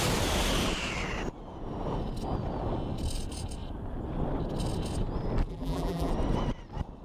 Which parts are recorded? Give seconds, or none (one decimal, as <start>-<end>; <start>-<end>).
0.0-5.5; 6.1-7.0